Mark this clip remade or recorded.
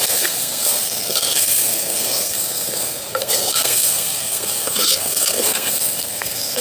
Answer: remade